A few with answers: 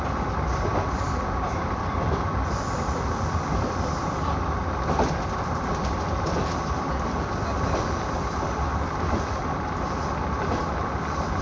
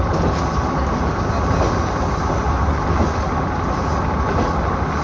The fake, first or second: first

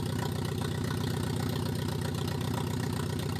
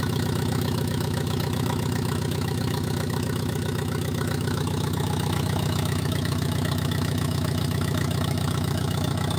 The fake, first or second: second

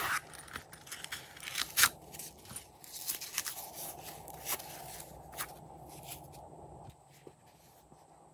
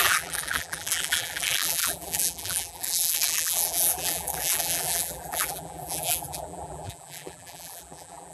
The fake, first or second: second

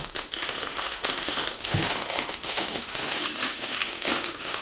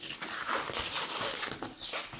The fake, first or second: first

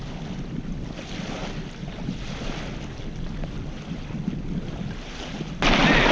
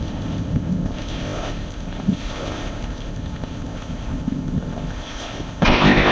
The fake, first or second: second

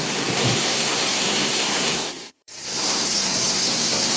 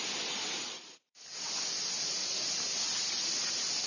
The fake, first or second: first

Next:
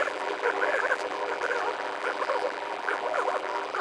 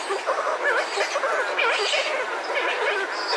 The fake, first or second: first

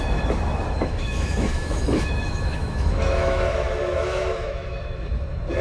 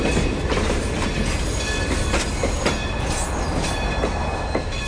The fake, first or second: first